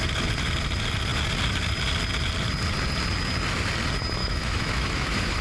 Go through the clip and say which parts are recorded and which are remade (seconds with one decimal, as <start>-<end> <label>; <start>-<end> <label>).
0.0-4.2 recorded; 4.2-5.4 remade